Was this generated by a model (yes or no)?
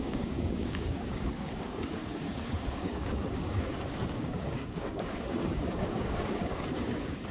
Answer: yes